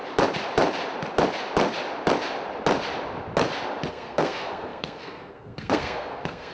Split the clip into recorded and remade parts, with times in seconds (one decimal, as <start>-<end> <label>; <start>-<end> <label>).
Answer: 0.0-3.9 recorded; 3.9-6.5 remade